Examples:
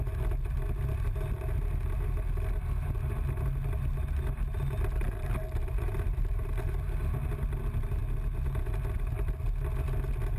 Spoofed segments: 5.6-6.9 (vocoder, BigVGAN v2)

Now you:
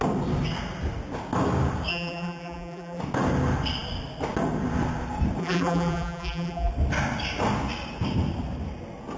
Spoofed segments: 1.9-3.0 (vocoder, BigVGAN v2); 5.4-6.7

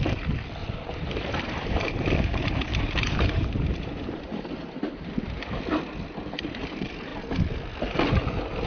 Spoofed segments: 0.6-5.2 (vocoder, BigVGAN v2)